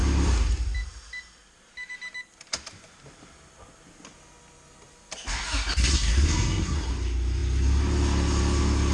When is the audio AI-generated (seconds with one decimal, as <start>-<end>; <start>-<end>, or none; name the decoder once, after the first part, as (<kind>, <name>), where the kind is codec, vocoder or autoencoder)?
5.8-6.9 (codec, SNAC)